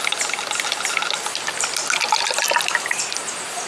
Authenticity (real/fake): real